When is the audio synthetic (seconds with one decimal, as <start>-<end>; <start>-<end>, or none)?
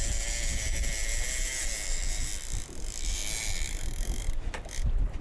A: 0.0-2.3; 2.8-3.2; 4.2-5.2